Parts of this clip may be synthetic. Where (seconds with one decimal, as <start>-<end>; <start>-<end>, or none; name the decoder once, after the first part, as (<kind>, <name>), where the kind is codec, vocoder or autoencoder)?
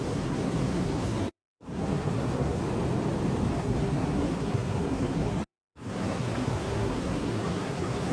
0.0-2.6 (codec, SNAC); 3.6-8.1